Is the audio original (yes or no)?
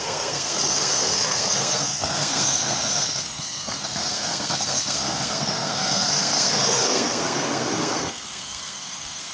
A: no